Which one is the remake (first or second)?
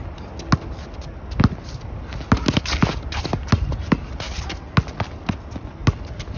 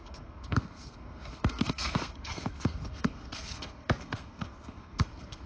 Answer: second